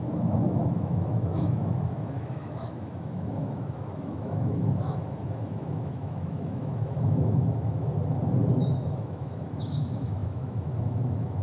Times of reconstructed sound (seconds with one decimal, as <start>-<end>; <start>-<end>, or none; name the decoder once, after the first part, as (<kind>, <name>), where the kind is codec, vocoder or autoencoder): 0.0-7.9 (autoencoder, DAC-VAE); 8.5-11.4